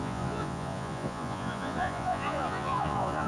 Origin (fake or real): fake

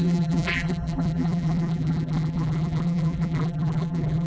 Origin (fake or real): fake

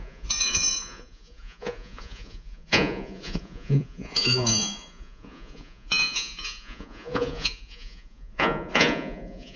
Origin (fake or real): fake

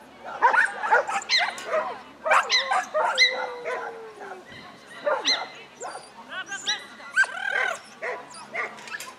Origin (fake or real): real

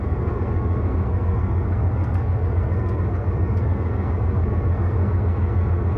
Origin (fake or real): fake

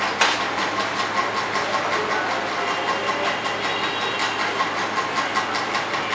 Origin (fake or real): real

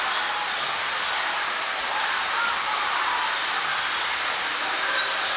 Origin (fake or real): real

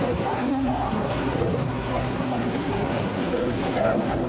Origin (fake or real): fake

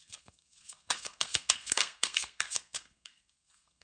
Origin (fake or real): fake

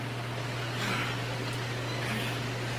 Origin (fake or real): real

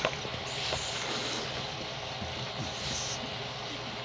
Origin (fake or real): real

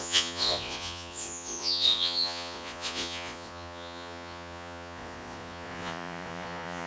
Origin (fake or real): fake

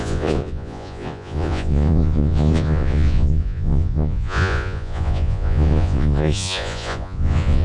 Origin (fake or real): fake